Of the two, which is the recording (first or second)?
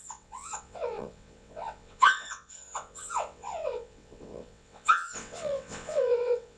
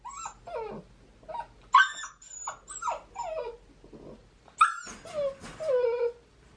second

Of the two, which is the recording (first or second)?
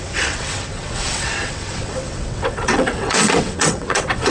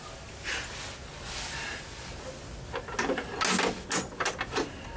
second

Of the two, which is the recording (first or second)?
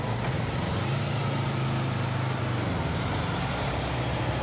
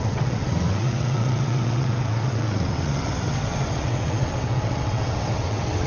first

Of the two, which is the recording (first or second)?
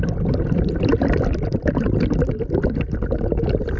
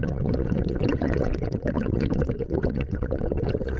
first